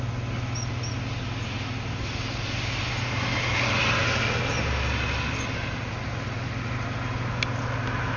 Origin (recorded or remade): recorded